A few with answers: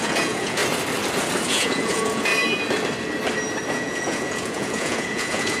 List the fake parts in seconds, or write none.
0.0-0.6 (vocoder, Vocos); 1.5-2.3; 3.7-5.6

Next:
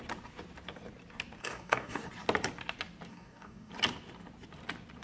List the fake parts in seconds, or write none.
1.4-2.1 (codec, DAC); 3.1-3.7

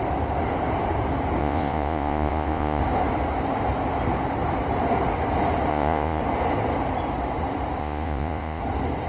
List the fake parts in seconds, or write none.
1.4-2.8 (vocoder, Vocos); 5.7-6.2; 7.8-8.6

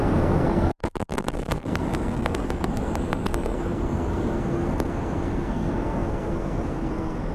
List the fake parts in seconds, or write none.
0.0-7.3 (codec, SNAC)

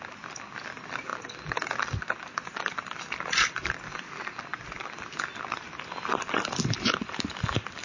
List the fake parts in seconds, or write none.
none